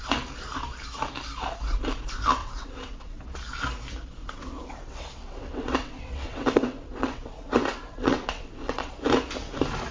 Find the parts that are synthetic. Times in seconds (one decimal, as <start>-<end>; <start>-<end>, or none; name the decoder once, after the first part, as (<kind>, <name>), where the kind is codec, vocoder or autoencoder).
2.4-3.2 (vocoder, WaveNeXt); 4.2-8.9